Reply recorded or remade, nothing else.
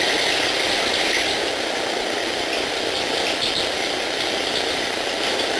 recorded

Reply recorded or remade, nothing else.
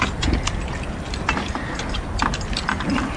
recorded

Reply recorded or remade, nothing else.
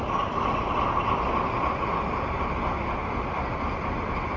recorded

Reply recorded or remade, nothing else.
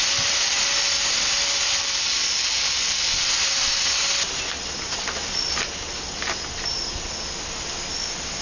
recorded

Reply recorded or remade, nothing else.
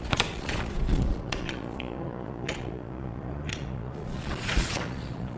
remade